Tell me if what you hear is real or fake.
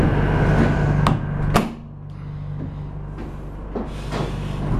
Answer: real